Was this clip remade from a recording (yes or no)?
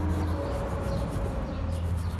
no